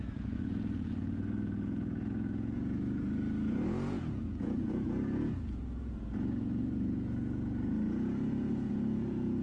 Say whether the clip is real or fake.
fake